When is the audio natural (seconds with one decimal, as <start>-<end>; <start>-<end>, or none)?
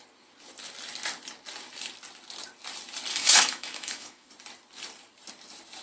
0.0-3.1; 4.3-5.8